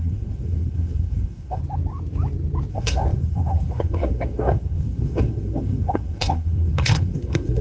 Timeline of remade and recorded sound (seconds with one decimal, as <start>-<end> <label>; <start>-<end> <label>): 0.0-1.6 remade; 1.6-2.7 recorded; 2.7-7.6 remade